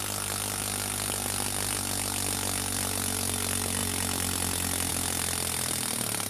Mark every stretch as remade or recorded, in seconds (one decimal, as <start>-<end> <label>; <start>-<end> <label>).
0.0-6.3 recorded